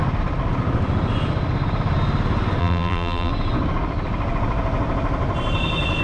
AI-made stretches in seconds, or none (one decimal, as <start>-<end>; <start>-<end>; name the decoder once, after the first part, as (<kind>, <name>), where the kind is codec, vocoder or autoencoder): 2.6-3.3 (vocoder, BigVGAN v2)